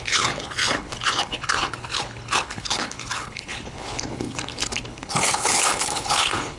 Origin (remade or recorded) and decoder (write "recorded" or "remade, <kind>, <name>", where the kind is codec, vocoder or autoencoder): remade, codec, HILCodec